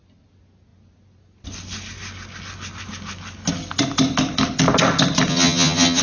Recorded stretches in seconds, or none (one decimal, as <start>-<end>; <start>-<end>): 0.0-5.3